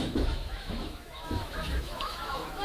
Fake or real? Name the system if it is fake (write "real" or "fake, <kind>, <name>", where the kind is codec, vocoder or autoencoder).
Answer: fake, autoencoder, DAC-VAE